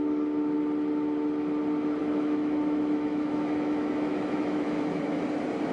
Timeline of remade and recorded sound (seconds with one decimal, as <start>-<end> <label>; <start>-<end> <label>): 0.0-2.0 recorded; 2.0-5.2 remade; 5.2-5.7 recorded